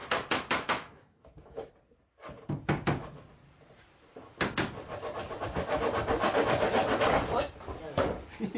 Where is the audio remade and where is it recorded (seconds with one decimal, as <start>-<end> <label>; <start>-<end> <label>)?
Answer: 0.0-1.7 remade; 1.7-8.6 recorded